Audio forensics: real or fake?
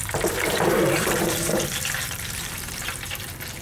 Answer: fake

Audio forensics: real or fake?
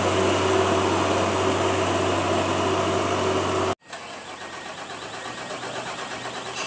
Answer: real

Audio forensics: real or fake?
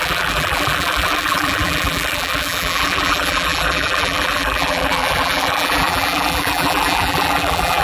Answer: fake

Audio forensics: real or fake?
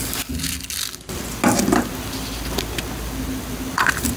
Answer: real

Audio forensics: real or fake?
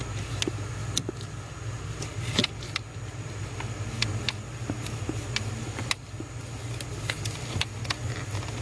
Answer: real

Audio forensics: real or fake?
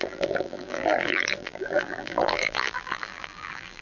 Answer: fake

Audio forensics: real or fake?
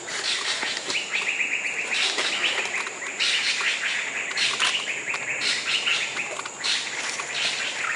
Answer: real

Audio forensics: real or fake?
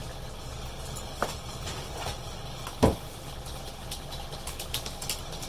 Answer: real